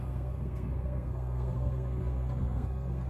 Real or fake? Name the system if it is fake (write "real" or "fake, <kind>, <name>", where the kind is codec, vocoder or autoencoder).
fake, codec, SNAC